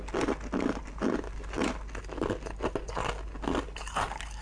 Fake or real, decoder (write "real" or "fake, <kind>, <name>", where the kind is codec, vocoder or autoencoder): real